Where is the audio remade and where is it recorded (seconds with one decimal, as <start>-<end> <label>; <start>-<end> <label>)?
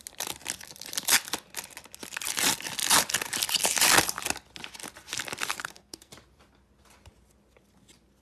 0.0-5.6 recorded; 5.6-6.1 remade; 6.1-8.2 recorded